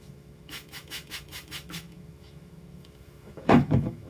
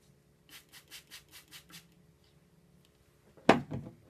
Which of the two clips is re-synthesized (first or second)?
first